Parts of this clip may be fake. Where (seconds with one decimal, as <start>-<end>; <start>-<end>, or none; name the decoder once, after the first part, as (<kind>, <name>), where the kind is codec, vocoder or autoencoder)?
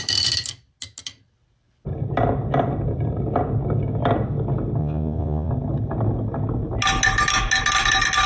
4.8-5.5 (vocoder, Vocos)